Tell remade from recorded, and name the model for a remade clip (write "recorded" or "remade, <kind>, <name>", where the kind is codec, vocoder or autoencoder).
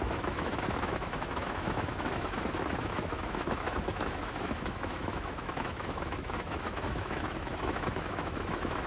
remade, autoencoder, DAC-VAE